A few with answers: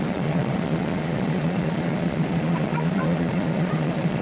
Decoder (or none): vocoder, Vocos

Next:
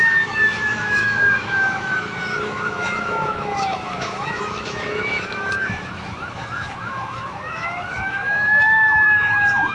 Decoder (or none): autoencoder, DAC-VAE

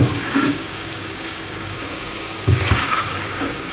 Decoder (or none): codec, DAC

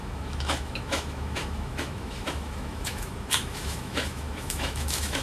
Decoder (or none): autoencoder, DAC-VAE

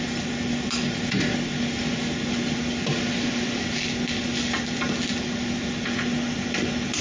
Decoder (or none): none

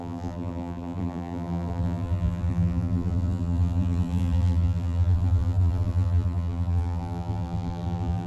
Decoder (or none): vocoder, BigVGAN v2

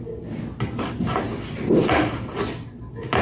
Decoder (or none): none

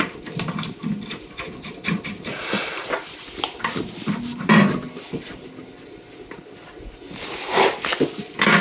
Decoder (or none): none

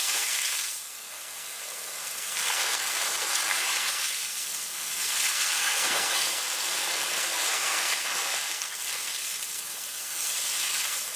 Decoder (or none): codec, SNAC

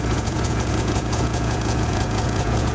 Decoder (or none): vocoder, Vocos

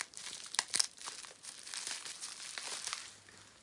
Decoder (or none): none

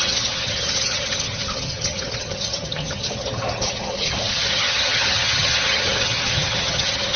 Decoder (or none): vocoder, HiFi-GAN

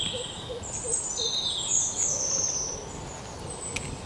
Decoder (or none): none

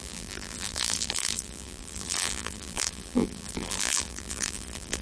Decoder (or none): vocoder, BigVGAN v2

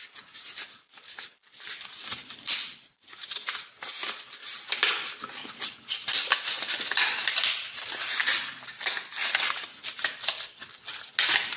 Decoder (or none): none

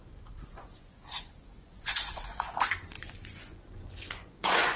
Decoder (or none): vocoder, Vocos